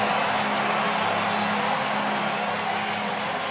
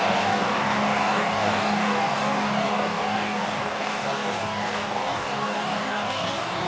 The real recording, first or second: first